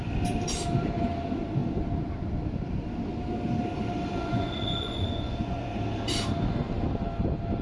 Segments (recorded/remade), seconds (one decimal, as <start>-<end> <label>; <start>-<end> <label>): 0.0-4.1 recorded; 4.1-5.7 remade; 5.7-7.6 recorded